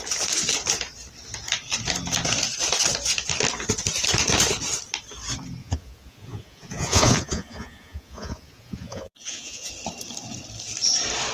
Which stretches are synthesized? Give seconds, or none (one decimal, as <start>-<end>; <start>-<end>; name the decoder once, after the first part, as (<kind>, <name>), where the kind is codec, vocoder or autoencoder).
5.6-9.7 (vocoder, Vocos)